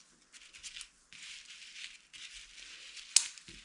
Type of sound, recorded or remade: recorded